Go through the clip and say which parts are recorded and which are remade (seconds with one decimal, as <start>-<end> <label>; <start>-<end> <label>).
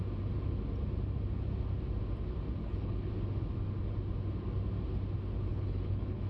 0.0-2.6 recorded; 2.6-3.1 remade; 3.1-5.5 recorded; 5.5-6.3 remade